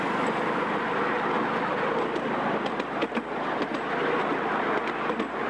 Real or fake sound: real